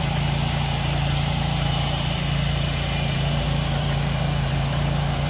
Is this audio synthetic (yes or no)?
yes